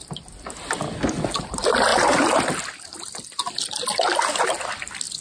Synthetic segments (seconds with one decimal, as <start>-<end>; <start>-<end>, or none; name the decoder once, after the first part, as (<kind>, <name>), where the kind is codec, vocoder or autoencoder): none

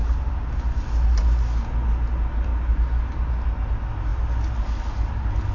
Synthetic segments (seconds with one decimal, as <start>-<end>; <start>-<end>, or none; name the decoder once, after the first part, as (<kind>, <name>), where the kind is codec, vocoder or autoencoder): none

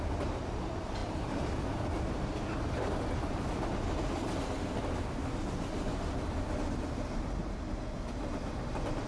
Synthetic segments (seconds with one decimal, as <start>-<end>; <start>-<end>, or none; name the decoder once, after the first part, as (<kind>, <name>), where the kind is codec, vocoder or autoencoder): 1.0-2.1 (vocoder, BigVGAN v2)

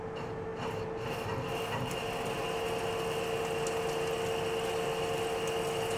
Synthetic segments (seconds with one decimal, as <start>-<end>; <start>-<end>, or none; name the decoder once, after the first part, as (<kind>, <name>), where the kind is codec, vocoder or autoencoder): none

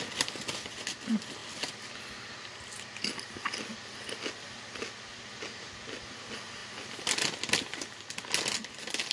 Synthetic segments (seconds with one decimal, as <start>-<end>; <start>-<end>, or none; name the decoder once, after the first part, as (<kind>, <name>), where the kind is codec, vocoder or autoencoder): none